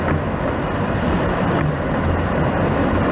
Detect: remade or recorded remade